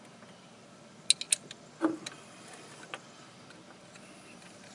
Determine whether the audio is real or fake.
real